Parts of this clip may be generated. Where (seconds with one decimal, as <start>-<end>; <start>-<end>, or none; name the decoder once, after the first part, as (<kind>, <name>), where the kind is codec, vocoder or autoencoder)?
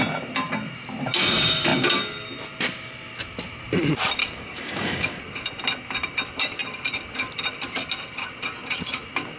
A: 4.2-5.2 (codec, DAC)